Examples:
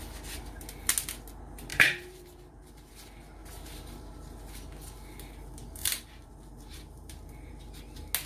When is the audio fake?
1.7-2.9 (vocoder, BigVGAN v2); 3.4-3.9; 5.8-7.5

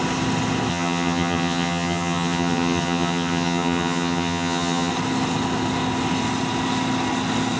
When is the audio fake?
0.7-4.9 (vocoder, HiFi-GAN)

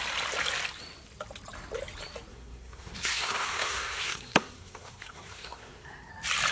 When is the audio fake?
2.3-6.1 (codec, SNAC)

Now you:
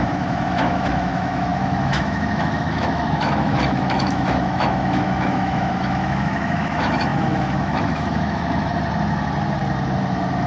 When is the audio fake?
0.0-8.7 (autoencoder, DAC-VAE)

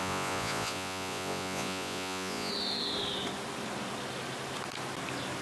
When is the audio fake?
0.0-2.5 (vocoder, Vocos)

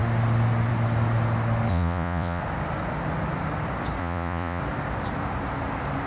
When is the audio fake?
1.7-2.4 (vocoder, Vocos); 4.0-4.6